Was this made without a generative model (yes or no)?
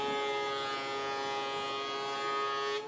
yes